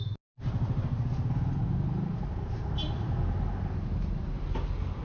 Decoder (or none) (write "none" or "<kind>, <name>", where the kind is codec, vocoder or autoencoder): none